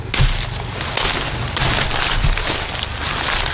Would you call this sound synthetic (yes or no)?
no